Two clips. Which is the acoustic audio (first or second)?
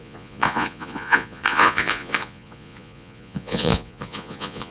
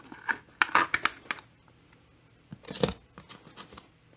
second